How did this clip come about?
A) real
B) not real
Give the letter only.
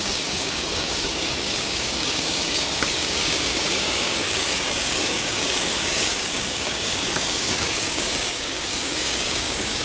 B